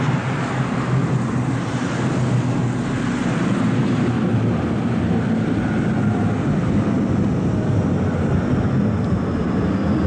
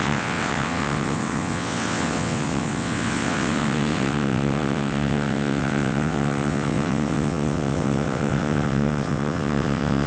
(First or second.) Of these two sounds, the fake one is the second